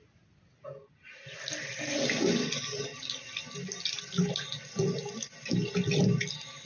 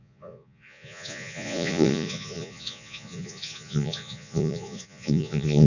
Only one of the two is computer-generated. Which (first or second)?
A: second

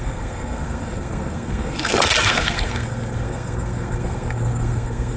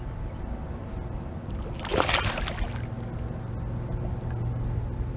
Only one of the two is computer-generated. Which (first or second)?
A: first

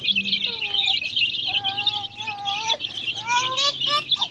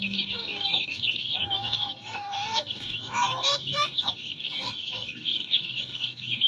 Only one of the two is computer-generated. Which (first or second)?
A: second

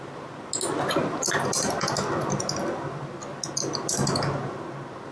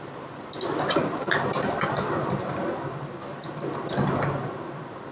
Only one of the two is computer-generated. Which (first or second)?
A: second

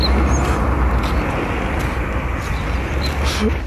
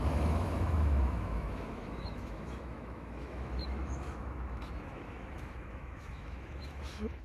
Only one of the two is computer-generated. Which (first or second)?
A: second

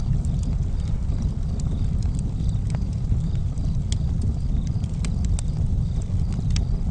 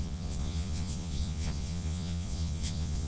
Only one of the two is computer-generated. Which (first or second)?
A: second